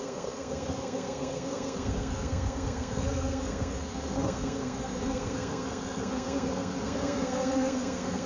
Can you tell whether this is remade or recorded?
remade